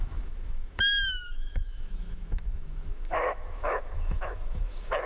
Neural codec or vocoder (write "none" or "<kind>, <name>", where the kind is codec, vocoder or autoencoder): autoencoder, DAC-VAE